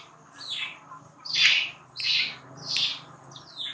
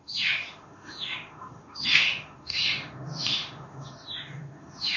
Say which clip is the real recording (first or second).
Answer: first